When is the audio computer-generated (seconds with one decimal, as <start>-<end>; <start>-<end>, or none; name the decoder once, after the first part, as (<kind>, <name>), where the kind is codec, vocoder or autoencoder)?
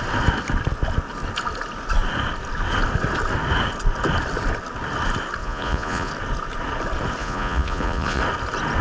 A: 5.4-6.1 (vocoder, Vocos); 7.2-8.2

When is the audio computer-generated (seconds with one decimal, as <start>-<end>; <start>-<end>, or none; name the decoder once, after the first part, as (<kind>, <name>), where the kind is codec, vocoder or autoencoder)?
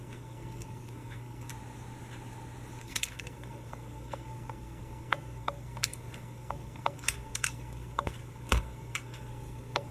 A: 0.0-1.5 (codec, SNAC); 2.8-9.9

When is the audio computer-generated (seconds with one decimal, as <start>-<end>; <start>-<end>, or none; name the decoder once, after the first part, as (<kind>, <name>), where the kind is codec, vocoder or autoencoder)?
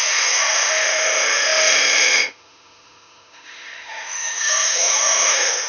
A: 0.0-5.7 (autoencoder, DAC-VAE)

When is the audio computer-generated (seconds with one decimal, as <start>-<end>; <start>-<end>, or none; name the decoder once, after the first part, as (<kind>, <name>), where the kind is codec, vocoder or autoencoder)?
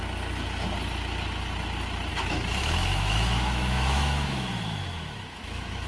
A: 2.1-5.9 (autoencoder, DAC-VAE)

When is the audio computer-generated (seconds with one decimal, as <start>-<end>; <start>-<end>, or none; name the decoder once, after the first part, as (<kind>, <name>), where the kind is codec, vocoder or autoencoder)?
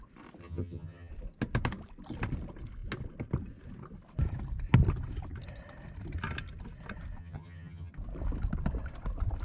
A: 0.4-1.1 (vocoder, HiFi-GAN); 7.2-7.9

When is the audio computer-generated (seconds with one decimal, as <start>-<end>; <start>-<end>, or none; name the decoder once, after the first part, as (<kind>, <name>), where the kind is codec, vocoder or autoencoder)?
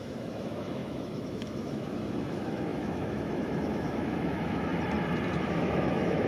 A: 0.0-4.7 (autoencoder, DAC-VAE); 5.5-6.3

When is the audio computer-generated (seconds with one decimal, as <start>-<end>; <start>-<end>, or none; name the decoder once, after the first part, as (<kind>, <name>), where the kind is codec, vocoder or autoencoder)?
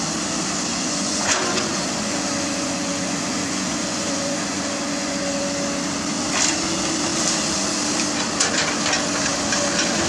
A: 0.7-5.4 (vocoder, Vocos)